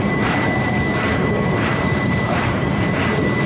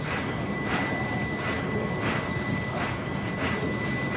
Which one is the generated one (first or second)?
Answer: first